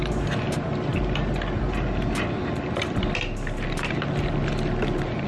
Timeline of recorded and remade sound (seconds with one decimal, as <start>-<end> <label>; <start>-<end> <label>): 0.0-5.3 recorded